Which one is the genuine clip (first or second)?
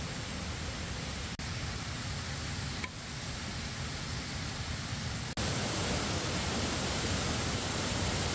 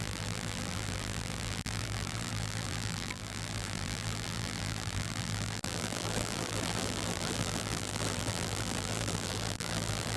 first